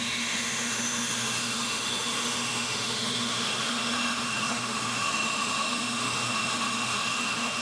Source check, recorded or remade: remade